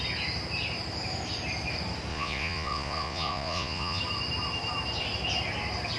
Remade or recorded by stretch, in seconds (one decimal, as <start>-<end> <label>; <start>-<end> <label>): 0.0-2.1 recorded; 2.1-4.0 remade; 4.0-6.0 recorded